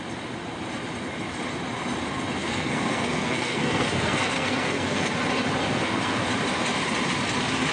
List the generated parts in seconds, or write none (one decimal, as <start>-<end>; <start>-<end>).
2.4-5.1; 5.6-6.2